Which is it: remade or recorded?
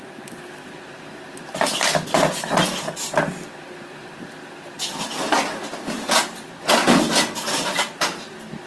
recorded